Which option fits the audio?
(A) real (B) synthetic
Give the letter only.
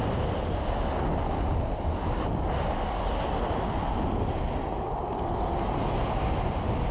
A